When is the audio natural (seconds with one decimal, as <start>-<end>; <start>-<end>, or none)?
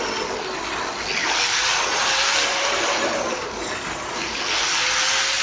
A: 0.0-1.2; 4.4-5.4